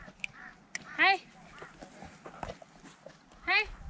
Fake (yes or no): no